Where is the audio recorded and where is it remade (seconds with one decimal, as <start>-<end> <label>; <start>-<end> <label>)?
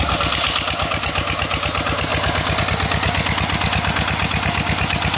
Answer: 0.0-5.2 recorded